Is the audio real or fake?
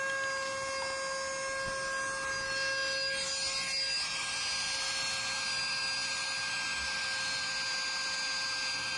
real